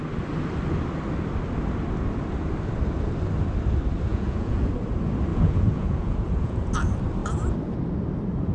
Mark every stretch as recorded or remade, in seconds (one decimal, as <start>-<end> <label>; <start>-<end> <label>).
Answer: 0.0-4.1 recorded; 4.1-4.7 remade; 4.7-5.3 recorded; 5.3-6.7 remade; 6.7-8.5 recorded